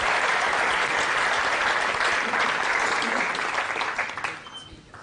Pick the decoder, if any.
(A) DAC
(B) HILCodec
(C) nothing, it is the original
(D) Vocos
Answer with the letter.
C